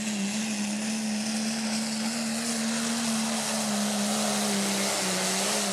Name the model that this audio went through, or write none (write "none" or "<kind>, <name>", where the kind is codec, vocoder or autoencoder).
none